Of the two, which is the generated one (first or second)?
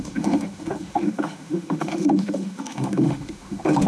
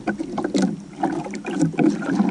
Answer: first